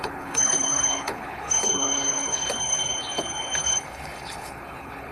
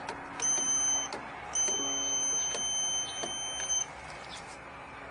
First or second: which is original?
second